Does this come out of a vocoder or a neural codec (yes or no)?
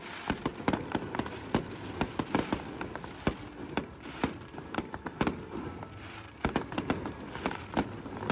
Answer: yes